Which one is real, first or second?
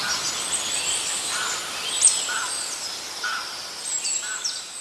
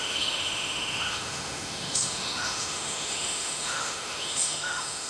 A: first